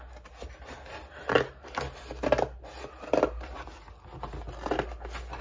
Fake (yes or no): no